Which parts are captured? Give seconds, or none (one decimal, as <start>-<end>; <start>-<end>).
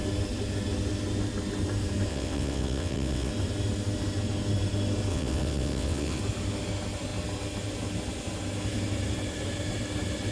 0.0-2.1; 3.3-5.1; 6.2-10.3